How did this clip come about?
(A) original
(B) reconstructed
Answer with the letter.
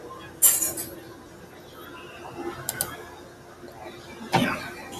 A